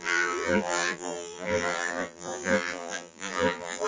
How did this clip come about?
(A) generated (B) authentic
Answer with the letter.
A